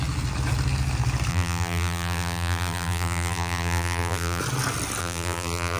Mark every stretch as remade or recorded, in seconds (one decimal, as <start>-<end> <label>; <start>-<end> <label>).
0.0-1.3 recorded; 1.3-4.4 remade; 4.4-5.0 recorded; 5.0-5.8 remade